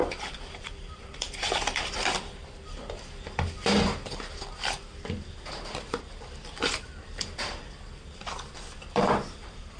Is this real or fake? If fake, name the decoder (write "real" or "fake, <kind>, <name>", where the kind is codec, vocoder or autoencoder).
fake, vocoder, BigVGAN v2